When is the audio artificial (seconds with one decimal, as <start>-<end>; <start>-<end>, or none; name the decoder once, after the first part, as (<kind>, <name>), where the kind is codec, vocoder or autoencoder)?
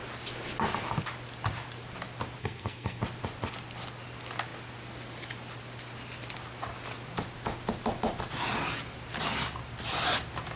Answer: 2.4-3.0 (codec, SNAC)